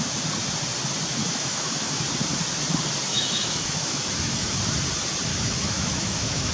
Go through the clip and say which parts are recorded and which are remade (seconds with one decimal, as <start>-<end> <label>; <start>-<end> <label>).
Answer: 0.0-1.2 recorded; 1.2-2.0 remade; 2.0-3.1 recorded; 3.1-4.6 remade; 4.6-5.3 recorded; 5.3-6.5 remade